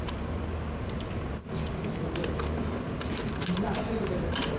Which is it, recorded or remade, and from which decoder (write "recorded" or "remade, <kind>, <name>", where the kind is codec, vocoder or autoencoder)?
recorded